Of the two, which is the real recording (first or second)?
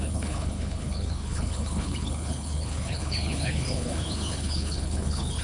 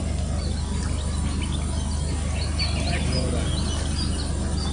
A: second